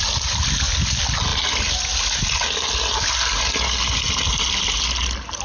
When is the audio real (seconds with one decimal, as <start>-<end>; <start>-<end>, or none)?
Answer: 0.0-5.4